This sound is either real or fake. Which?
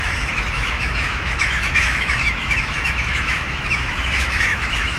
fake